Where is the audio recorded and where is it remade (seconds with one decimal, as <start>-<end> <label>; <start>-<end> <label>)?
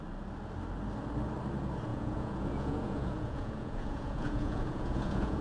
0.0-1.9 recorded; 1.9-5.4 remade